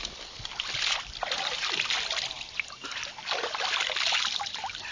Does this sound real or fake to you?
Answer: real